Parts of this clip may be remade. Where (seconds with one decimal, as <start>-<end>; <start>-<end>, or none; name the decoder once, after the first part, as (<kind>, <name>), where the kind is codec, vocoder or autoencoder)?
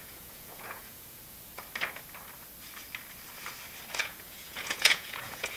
0.0-1.5 (vocoder, Vocos); 4.0-5.6